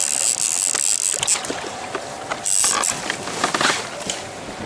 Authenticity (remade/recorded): recorded